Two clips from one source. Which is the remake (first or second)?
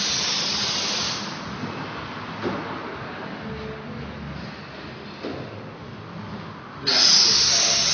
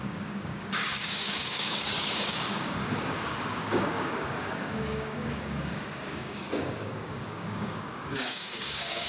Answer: second